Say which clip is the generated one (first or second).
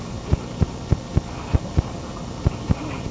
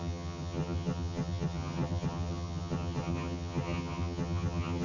second